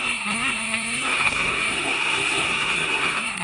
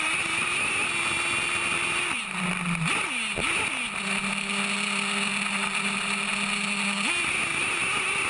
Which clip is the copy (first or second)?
first